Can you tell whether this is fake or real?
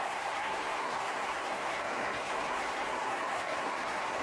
fake